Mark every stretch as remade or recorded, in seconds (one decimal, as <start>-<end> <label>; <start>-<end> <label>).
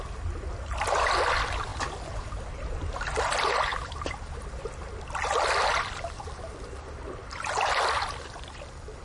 0.0-9.0 recorded